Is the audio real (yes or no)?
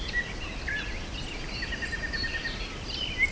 yes